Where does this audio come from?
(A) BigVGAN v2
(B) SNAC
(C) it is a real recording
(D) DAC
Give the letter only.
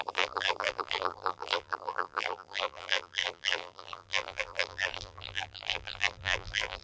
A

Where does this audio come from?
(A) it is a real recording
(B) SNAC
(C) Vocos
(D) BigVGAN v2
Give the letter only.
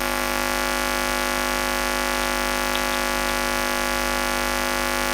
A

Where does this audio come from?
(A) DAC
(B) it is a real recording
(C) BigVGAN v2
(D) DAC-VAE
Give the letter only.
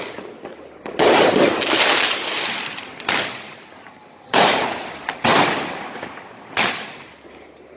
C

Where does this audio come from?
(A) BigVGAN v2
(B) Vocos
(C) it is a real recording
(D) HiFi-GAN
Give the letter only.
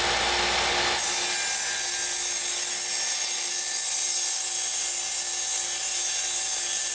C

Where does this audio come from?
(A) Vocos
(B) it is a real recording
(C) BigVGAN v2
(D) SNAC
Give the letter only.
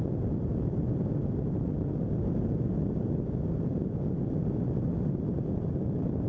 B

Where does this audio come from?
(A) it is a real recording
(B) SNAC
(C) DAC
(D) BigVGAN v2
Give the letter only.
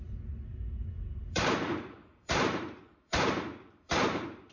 D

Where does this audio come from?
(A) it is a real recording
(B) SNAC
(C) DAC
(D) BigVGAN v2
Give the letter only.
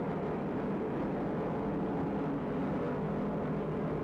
A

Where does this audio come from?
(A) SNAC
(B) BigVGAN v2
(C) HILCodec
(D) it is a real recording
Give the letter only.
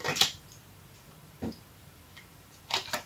B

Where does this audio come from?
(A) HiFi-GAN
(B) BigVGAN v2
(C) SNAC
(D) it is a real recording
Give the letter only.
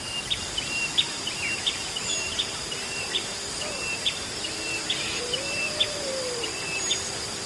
B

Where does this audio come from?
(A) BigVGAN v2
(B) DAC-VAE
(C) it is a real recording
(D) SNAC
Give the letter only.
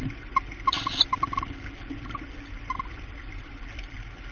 C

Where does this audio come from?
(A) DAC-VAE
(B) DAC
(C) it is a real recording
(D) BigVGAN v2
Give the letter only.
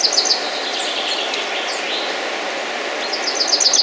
C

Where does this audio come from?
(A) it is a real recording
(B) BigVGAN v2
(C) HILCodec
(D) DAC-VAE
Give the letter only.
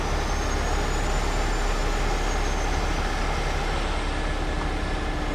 A